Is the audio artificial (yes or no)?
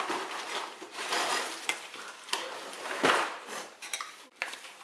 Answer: yes